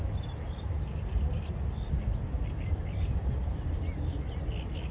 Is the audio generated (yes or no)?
no